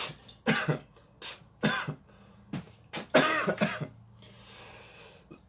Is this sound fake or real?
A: real